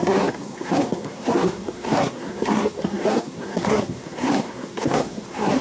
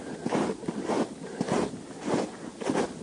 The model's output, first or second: first